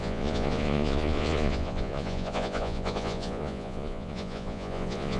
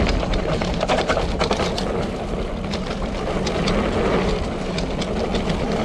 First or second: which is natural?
second